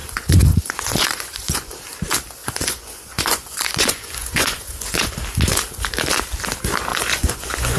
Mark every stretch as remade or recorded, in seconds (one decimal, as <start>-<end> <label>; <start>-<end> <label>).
0.0-1.7 remade; 1.7-2.4 recorded; 2.4-5.1 remade; 5.1-6.9 recorded; 6.9-7.8 remade